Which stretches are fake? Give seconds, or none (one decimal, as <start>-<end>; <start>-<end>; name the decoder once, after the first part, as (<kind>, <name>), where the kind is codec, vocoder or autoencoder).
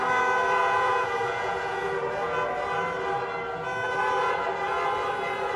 0.6-1.9 (vocoder, Vocos)